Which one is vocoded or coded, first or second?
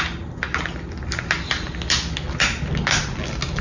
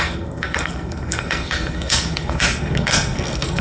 second